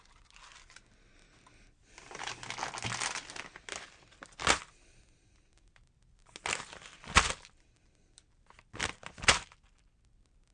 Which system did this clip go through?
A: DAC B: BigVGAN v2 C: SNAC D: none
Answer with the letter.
D